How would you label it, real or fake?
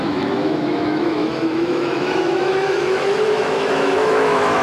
fake